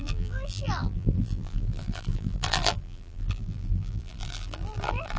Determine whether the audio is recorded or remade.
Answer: remade